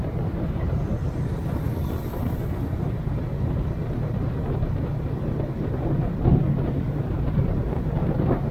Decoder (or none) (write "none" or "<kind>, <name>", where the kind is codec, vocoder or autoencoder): vocoder, BigVGAN v2